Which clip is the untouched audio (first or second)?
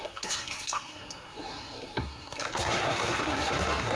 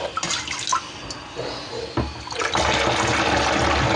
second